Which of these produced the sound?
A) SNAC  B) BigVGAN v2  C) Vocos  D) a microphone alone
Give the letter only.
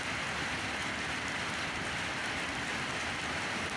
D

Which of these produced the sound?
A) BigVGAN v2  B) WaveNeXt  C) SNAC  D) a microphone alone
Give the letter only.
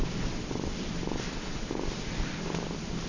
A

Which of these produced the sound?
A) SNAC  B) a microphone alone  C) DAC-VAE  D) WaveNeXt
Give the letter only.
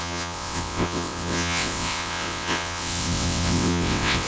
D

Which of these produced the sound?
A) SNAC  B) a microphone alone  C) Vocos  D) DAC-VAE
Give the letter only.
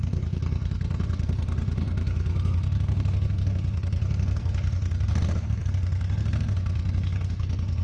A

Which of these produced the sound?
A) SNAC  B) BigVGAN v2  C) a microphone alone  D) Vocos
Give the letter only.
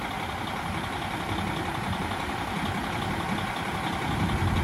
C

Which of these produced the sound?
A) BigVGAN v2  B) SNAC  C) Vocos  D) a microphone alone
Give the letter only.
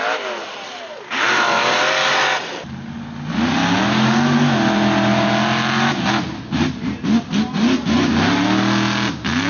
D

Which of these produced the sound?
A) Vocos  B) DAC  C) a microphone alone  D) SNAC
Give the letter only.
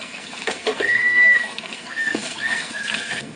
D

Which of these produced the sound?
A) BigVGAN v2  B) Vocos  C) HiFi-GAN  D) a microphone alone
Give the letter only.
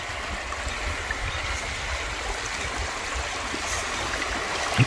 D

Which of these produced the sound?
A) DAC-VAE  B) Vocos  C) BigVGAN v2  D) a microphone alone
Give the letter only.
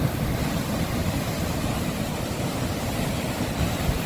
D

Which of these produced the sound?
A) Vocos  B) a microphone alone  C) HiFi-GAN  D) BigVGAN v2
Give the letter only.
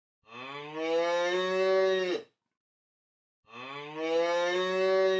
B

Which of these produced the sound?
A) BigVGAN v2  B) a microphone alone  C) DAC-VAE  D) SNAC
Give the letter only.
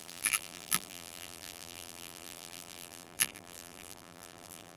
A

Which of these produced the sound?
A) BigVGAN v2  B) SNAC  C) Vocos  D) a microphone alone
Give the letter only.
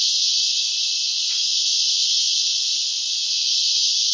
D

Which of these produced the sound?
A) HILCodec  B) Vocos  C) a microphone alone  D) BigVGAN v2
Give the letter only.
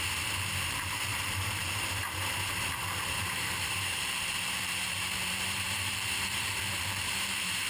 D